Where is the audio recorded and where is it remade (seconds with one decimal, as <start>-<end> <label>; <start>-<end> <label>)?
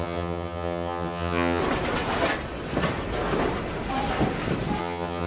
0.0-1.6 remade; 1.6-4.8 recorded; 4.8-5.3 remade